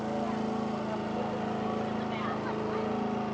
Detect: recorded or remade recorded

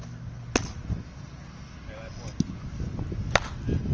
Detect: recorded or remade recorded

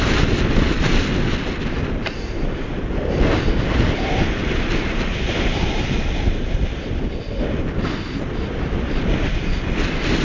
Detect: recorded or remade recorded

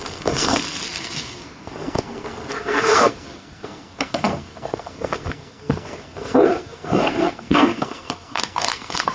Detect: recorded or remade remade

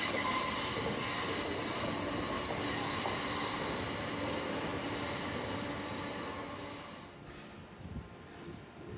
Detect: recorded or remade recorded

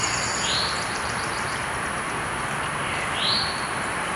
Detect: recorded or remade remade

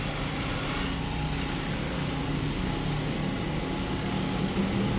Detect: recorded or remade recorded